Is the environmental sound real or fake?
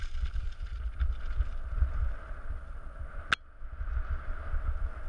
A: real